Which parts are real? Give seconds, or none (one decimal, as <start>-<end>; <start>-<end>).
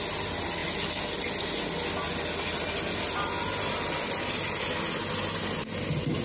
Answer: 0.0-6.2